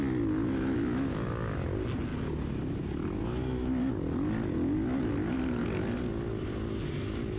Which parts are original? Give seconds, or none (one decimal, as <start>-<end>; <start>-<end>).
0.0-7.4